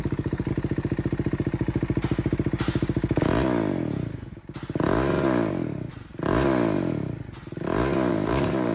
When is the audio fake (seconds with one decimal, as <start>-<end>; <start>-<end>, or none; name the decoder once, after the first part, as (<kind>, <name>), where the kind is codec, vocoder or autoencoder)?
0.0-0.5 (codec, DAC); 5.5-5.9; 8.1-8.7